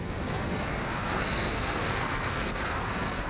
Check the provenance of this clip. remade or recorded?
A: remade